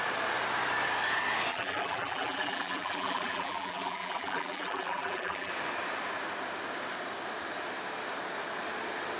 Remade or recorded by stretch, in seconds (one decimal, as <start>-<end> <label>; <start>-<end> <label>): 0.0-1.5 recorded; 1.5-5.5 remade; 5.5-9.2 recorded